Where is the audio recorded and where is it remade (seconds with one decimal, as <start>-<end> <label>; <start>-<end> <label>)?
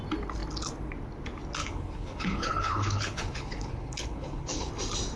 0.0-1.6 recorded; 1.6-4.7 remade; 4.7-5.2 recorded